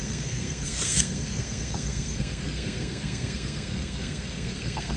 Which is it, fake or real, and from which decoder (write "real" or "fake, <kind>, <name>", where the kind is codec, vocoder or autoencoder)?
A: fake, codec, SNAC